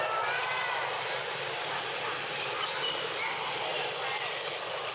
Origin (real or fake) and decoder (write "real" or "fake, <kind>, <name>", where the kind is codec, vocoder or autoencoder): real